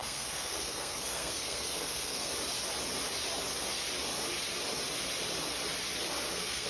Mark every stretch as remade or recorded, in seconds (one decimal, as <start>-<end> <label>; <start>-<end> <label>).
0.0-2.3 remade; 2.3-6.3 recorded; 6.3-6.7 remade